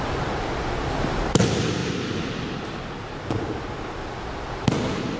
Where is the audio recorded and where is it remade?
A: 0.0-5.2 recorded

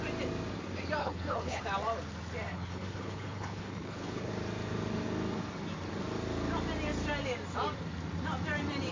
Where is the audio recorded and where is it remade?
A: 0.0-1.0 recorded; 1.0-1.6 remade; 1.6-2.5 recorded; 2.5-4.3 remade; 4.3-8.9 recorded

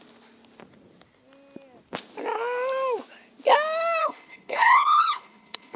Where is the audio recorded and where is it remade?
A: 0.0-4.0 recorded; 4.0-5.8 remade

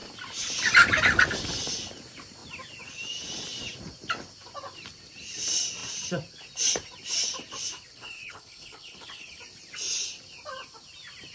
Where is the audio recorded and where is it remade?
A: 0.0-7.9 recorded; 7.9-9.4 remade; 9.4-11.3 recorded

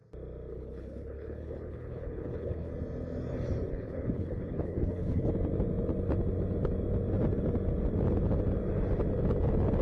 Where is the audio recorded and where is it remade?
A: 0.0-0.5 recorded; 0.5-2.7 remade; 2.7-3.7 recorded; 3.7-5.3 remade; 5.3-9.8 recorded